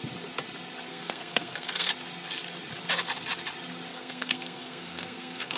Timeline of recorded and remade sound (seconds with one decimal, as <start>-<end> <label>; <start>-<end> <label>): 0.0-0.9 recorded; 0.9-1.9 remade; 1.9-3.9 recorded; 3.9-5.6 remade